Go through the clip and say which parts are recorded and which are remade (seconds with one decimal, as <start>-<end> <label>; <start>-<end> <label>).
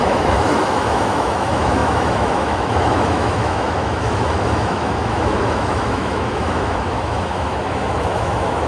0.0-8.7 remade